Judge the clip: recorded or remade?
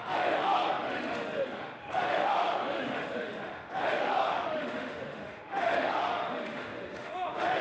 remade